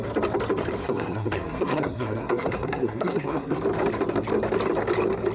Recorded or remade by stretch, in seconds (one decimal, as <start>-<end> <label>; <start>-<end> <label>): 0.0-0.8 recorded; 0.8-3.6 remade; 3.6-5.3 recorded